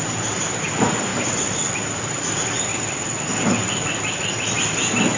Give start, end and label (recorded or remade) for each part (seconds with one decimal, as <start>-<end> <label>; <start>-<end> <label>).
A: 0.0-5.2 recorded